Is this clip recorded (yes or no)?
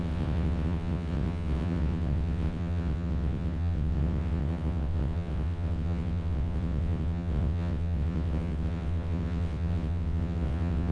no